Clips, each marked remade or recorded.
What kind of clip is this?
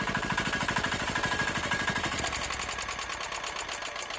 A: recorded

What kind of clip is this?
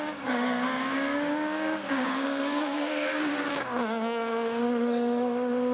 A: remade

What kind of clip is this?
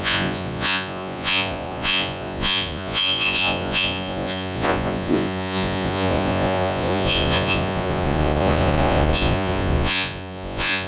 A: remade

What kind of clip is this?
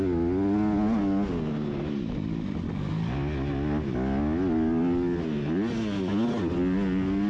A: recorded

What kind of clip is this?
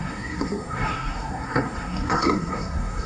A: remade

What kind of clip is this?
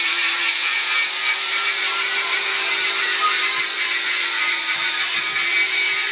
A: remade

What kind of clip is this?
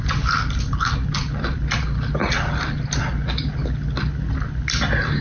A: recorded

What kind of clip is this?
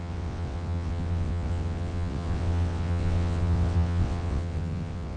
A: remade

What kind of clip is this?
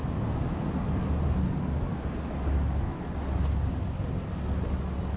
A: recorded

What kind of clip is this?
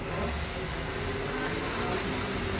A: recorded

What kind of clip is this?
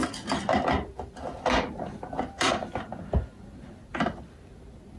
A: recorded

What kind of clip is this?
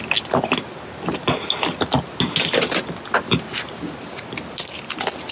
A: recorded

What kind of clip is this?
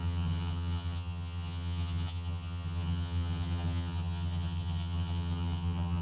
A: remade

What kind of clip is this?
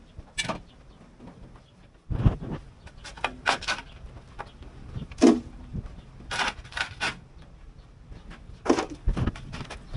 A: recorded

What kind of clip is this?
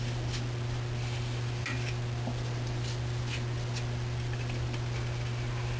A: recorded